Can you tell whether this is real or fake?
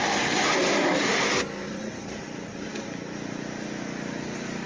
real